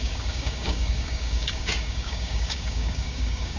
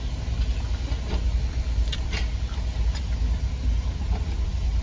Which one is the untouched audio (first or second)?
second